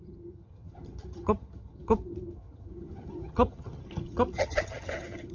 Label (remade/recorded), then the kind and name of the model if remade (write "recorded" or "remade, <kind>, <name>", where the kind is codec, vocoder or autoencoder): remade, vocoder, HiFi-GAN